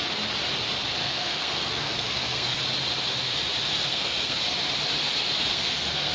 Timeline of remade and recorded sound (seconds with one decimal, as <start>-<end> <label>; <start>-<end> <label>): 0.0-1.0 recorded; 1.0-2.6 remade; 2.6-3.9 recorded; 3.9-4.4 remade; 4.4-5.5 recorded; 5.5-6.1 remade